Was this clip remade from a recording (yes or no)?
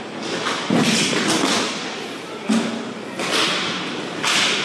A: no